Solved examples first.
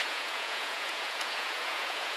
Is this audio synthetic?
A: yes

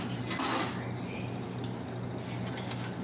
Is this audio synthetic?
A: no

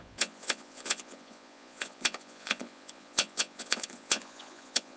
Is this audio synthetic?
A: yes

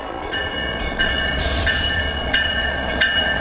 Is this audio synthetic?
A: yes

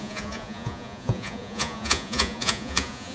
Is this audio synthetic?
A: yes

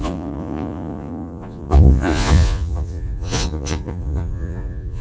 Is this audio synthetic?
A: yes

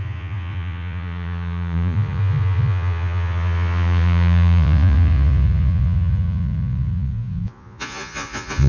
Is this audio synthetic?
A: yes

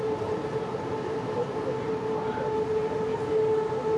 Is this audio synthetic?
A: no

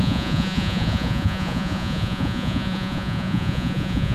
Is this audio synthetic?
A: yes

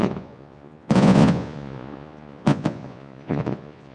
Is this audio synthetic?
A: yes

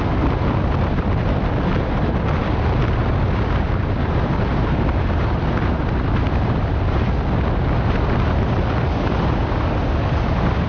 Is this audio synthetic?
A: no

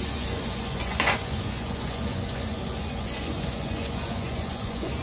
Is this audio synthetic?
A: yes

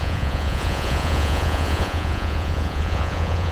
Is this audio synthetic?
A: yes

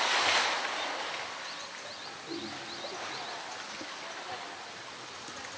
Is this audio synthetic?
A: no